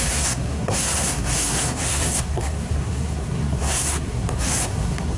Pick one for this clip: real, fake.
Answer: fake